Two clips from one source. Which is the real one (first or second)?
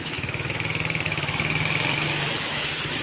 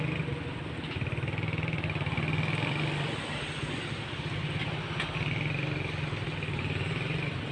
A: second